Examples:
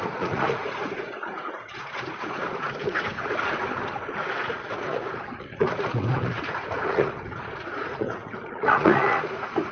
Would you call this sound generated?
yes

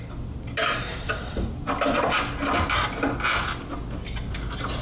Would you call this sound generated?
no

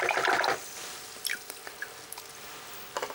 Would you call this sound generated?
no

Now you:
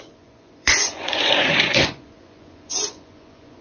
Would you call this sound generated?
yes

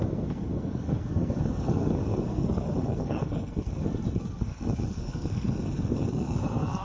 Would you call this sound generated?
yes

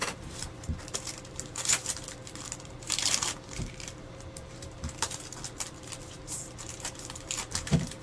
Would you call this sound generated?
yes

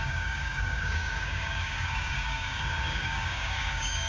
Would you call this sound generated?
yes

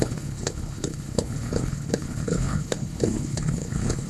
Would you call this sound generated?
yes